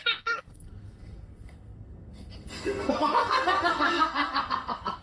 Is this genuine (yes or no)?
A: no